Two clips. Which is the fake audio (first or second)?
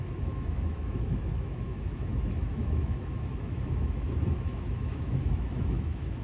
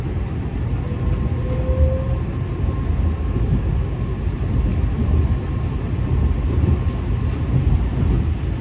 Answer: first